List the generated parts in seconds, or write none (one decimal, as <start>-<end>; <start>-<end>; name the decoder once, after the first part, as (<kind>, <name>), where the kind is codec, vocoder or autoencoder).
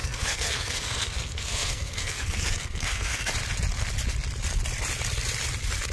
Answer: 0.0-3.3 (codec, SNAC)